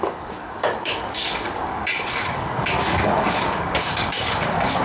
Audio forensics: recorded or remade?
remade